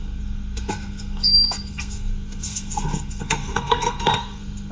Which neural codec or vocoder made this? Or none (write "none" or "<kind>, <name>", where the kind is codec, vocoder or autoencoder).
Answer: codec, SNAC